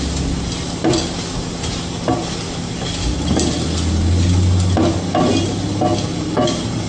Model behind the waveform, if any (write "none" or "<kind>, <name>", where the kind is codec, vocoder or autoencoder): none